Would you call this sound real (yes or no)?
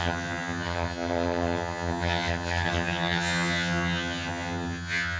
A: no